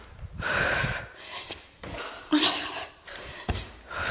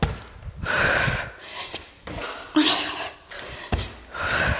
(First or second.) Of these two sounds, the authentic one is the second